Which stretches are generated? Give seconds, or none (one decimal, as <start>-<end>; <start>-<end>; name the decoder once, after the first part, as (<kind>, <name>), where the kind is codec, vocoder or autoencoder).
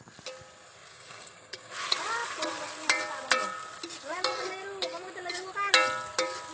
0.9-1.7 (codec, DAC)